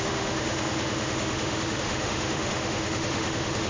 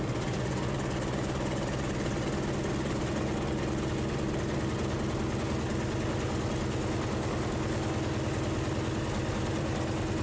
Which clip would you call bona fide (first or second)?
second